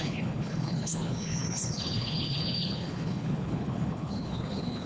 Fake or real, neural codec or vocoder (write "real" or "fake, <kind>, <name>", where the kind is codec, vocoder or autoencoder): fake, codec, HILCodec